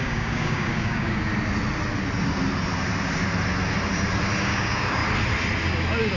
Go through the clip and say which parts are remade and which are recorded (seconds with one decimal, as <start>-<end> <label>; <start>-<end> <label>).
0.0-1.3 remade; 1.3-4.4 recorded; 4.4-5.0 remade; 5.0-6.2 recorded